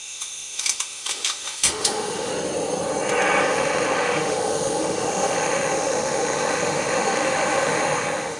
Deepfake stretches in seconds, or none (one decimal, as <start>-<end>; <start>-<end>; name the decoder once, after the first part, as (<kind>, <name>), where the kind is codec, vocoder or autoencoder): 0.0-2.3 (autoencoder, DAC-VAE); 3.4-8.4